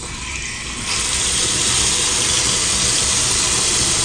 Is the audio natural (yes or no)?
yes